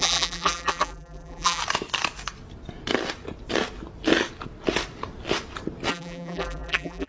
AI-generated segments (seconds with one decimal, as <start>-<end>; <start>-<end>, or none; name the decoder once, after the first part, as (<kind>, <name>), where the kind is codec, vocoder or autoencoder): 0.0-1.6 (vocoder, BigVGAN v2); 5.9-7.1